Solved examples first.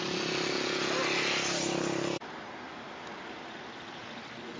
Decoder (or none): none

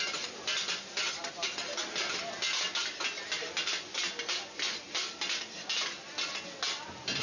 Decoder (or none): none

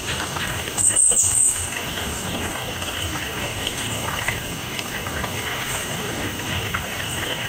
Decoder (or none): codec, DAC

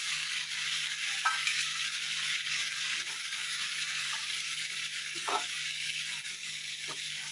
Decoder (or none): codec, DAC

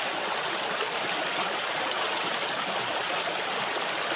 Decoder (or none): none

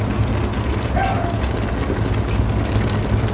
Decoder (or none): none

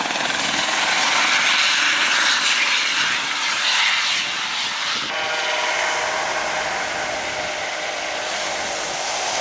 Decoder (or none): none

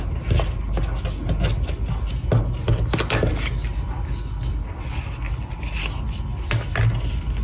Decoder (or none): none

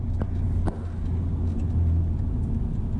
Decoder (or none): none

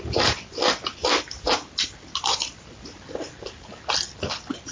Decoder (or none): none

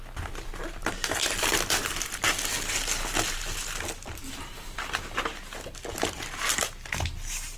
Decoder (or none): none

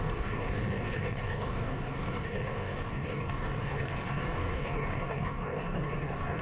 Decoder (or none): codec, DAC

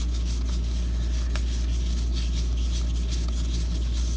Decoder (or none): none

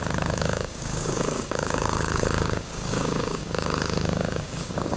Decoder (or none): codec, DAC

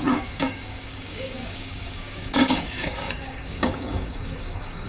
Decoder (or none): codec, DAC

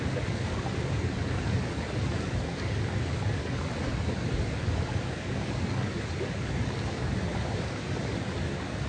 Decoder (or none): codec, DAC